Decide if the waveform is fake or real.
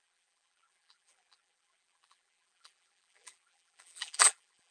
fake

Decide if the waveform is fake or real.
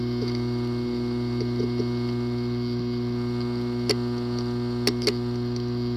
real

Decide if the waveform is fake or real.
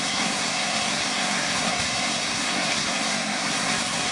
fake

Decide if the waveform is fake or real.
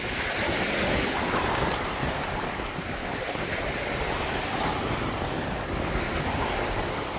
real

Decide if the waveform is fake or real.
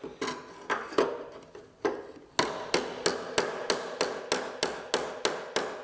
real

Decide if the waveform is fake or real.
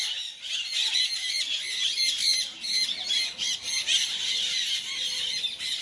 real